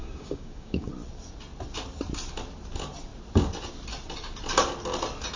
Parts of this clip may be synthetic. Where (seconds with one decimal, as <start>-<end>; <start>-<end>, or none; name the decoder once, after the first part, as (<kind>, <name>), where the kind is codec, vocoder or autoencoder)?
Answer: 0.0-0.9 (codec, DAC)